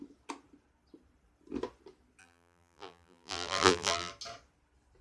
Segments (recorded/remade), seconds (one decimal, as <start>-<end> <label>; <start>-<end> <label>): 0.0-2.2 recorded; 2.2-4.1 remade; 4.1-5.0 recorded

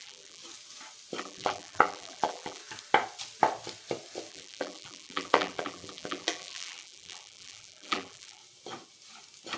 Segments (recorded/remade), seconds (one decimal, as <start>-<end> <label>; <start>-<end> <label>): 0.0-0.4 remade; 0.4-1.2 recorded; 1.2-2.6 remade; 2.6-4.3 recorded; 4.3-8.4 remade; 8.4-9.6 recorded

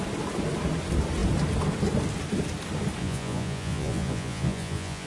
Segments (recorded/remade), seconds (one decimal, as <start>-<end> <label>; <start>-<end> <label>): 0.0-3.0 recorded; 3.0-5.1 remade

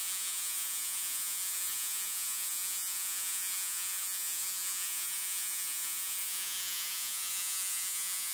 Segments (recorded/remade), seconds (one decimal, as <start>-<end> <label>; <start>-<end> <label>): 0.0-8.3 remade

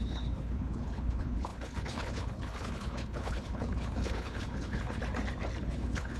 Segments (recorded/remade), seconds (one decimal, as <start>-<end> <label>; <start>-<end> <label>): 0.0-5.0 remade; 5.0-5.6 recorded; 5.6-6.2 remade

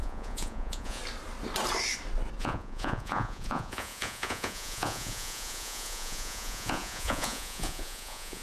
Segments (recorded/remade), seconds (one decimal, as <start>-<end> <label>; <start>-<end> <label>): 0.0-1.0 remade; 1.0-2.4 recorded; 2.4-8.4 remade

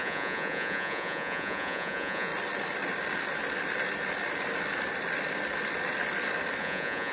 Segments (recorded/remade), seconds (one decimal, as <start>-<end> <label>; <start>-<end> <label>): 0.0-2.3 remade; 2.3-6.6 recorded; 6.6-7.1 remade